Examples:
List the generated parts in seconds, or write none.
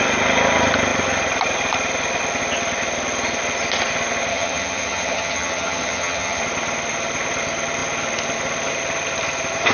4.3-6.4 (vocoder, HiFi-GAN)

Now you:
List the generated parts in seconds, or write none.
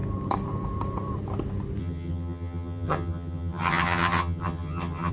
1.8-5.1 (vocoder, HiFi-GAN)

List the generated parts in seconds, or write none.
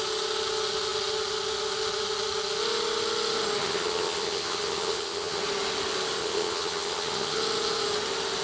3.6-5.4 (vocoder, HiFi-GAN); 6.2-7.4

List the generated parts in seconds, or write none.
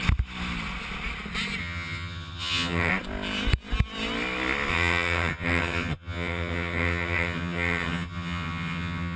1.6-2.9 (vocoder, HiFi-GAN); 4.7-9.2